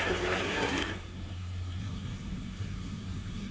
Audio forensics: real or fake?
fake